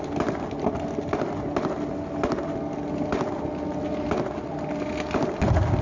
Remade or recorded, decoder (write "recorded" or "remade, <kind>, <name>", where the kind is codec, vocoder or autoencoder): recorded